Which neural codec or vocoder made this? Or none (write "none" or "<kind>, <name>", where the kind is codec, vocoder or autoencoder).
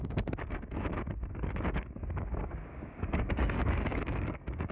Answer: codec, DAC